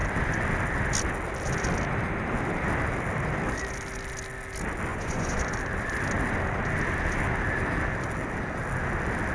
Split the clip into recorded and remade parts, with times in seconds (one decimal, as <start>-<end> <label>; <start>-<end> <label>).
0.0-4.9 recorded; 4.9-5.4 remade; 5.4-9.3 recorded